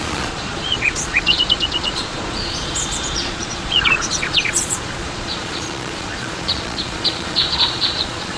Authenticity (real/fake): fake